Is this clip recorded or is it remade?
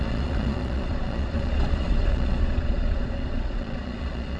remade